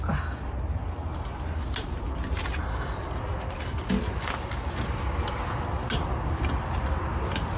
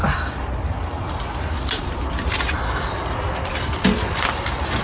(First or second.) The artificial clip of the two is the second